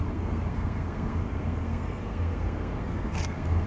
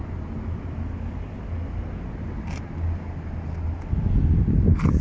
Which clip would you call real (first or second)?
second